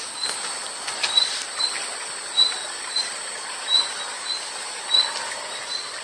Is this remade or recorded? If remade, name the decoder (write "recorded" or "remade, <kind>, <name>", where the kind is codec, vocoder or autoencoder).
recorded